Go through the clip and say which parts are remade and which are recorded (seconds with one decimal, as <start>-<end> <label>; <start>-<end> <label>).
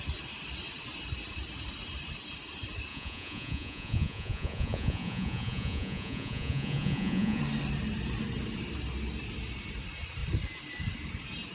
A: 0.0-2.9 recorded; 2.9-7.4 remade; 7.4-11.5 recorded